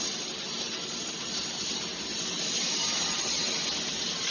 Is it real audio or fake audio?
real